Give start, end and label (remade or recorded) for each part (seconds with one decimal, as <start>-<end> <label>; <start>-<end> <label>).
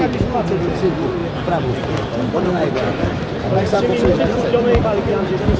0.0-5.6 recorded